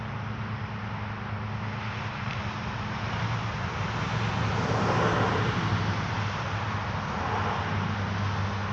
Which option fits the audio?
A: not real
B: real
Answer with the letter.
B